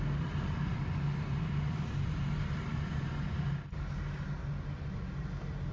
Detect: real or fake real